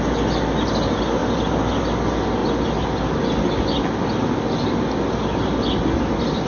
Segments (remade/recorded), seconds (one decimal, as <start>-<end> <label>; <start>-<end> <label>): 0.0-6.5 recorded